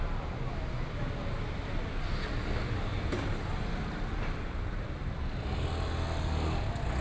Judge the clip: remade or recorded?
recorded